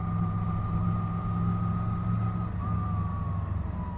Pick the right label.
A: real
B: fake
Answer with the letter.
A